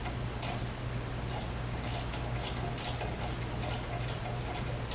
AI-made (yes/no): no